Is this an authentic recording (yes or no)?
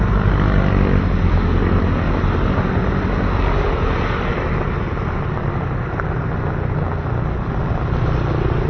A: yes